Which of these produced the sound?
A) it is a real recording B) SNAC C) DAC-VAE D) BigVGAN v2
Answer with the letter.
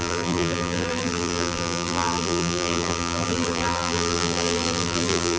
D